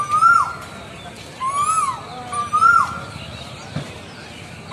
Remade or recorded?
recorded